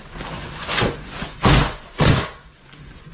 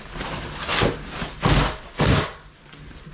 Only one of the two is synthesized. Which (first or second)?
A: first